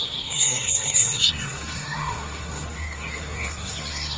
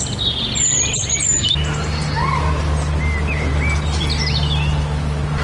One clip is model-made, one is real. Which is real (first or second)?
second